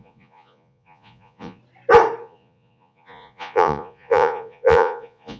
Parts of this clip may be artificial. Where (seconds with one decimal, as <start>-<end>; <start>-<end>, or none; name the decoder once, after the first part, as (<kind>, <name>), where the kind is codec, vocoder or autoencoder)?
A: 0.0-1.6 (vocoder, Vocos); 2.2-5.4